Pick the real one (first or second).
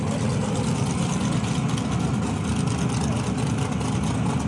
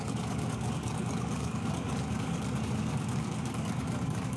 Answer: first